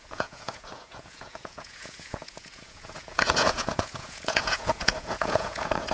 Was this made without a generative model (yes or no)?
no